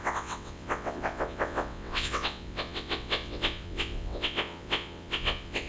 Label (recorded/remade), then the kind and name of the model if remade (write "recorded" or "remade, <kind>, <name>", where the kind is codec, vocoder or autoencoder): remade, vocoder, WaveNeXt